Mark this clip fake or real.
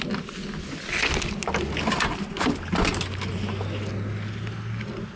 real